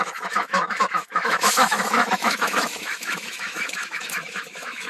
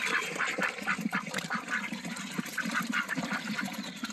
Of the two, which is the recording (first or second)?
second